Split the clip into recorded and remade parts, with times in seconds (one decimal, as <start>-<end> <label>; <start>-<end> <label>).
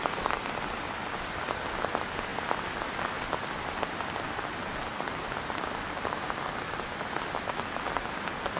0.0-8.6 recorded